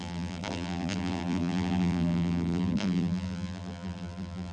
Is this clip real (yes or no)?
no